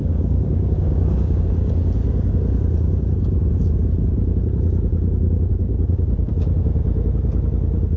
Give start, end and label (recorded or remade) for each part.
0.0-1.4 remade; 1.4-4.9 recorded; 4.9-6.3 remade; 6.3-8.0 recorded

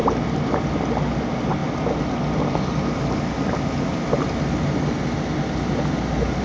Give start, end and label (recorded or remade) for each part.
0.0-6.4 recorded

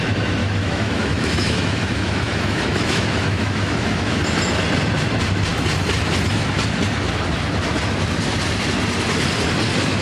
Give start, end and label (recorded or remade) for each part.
0.0-0.4 recorded; 0.4-4.2 remade; 4.2-10.0 recorded

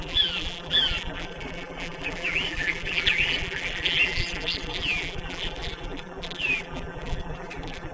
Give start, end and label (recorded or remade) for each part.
0.0-7.9 remade

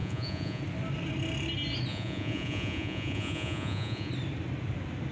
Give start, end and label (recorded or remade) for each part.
0.0-0.6 remade; 0.6-1.9 recorded; 1.9-4.1 remade; 4.1-5.1 recorded